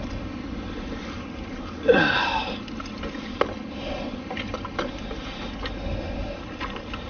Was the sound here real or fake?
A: real